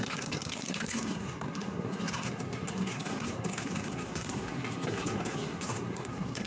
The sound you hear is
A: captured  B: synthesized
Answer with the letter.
B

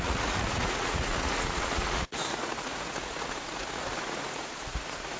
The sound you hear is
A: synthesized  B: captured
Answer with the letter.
A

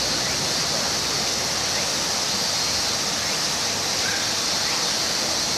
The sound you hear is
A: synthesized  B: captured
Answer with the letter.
B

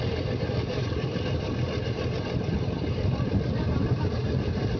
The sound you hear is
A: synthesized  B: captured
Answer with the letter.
A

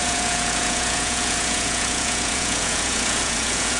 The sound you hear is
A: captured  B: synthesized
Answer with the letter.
B